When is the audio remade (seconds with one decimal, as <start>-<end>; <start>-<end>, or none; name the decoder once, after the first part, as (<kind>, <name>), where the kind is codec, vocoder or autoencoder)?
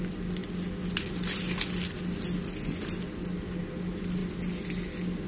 none